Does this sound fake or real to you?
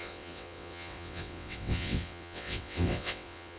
fake